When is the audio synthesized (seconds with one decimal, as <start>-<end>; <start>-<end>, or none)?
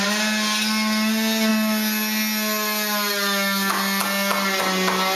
none